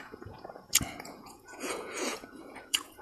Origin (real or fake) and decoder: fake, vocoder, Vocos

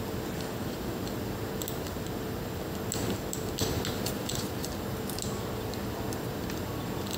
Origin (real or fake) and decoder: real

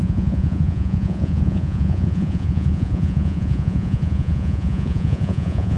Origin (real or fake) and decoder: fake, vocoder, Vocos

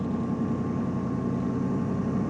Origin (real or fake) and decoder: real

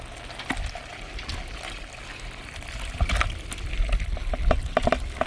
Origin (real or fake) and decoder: real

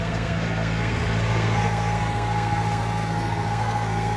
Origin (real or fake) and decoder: fake, codec, SNAC